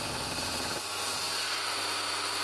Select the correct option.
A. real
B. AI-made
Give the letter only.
A